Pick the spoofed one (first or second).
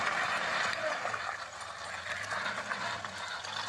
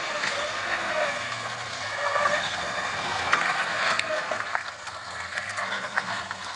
second